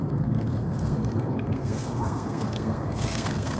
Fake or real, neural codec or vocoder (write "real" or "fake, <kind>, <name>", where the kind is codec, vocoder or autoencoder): fake, codec, SNAC